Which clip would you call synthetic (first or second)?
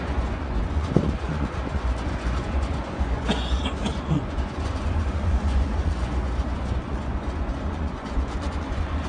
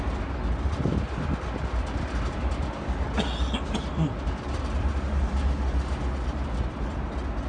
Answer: first